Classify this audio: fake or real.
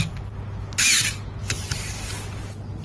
real